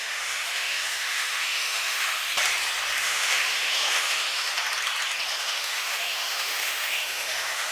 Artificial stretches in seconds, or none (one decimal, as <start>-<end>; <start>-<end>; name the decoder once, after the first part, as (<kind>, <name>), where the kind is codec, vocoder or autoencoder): 0.0-2.2 (autoencoder, DAC-VAE); 3.0-4.5; 5.4-7.7